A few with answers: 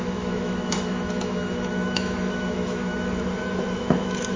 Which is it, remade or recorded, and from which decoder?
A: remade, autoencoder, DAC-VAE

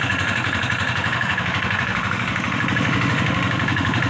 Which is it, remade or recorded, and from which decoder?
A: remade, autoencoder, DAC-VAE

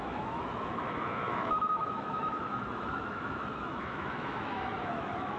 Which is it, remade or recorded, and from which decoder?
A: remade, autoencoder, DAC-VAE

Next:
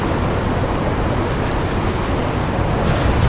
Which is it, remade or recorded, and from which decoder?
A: recorded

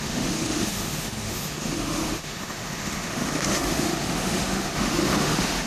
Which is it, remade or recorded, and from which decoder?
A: remade, autoencoder, DAC-VAE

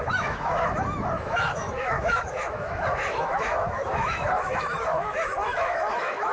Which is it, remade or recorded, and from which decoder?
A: remade, autoencoder, DAC-VAE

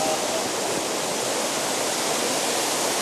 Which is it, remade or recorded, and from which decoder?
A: recorded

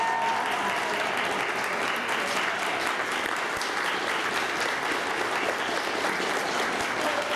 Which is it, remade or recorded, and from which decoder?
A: recorded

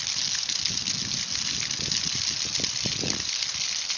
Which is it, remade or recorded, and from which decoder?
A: recorded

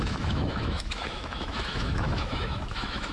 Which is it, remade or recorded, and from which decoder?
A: remade, autoencoder, DAC-VAE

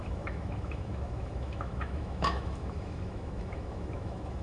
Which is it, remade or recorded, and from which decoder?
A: remade, autoencoder, DAC-VAE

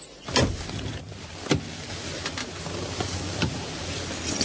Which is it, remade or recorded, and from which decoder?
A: recorded